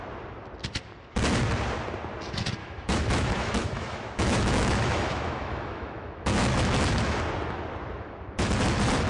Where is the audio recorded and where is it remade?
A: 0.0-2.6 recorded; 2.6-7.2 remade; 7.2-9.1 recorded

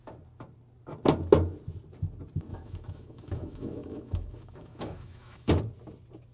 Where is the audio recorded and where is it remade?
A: 0.0-2.5 recorded; 2.5-5.5 remade; 5.5-6.3 recorded

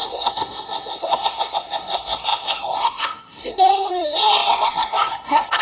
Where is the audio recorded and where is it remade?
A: 0.0-5.6 remade

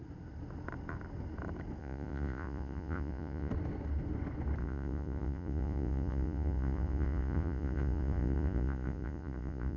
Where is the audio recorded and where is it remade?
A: 0.0-1.8 recorded; 1.8-3.5 remade; 3.5-4.6 recorded; 4.6-9.8 remade